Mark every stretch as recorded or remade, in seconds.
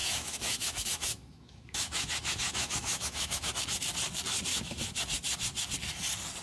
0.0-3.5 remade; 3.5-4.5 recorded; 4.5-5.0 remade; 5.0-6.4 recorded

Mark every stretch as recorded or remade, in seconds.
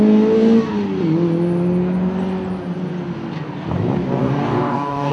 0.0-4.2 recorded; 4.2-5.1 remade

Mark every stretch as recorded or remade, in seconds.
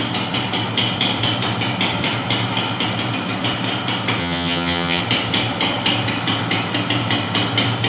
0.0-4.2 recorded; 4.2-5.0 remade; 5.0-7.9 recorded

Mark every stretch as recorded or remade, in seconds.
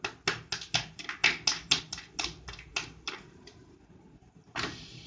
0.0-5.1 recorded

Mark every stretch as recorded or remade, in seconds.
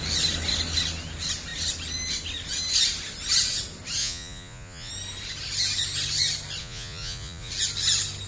0.0-4.0 recorded; 4.0-4.9 remade; 4.9-6.6 recorded; 6.6-7.5 remade; 7.5-8.3 recorded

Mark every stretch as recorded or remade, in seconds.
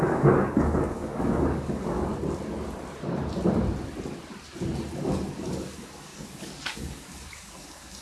0.0-2.1 remade; 2.1-5.0 recorded; 5.0-8.0 remade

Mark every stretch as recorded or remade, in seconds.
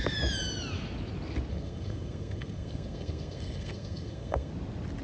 0.0-1.5 recorded; 1.5-4.5 remade; 4.5-5.0 recorded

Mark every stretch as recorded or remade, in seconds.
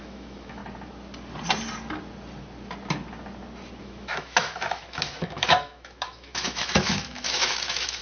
0.0-0.6 remade; 0.6-3.8 recorded; 3.8-8.0 remade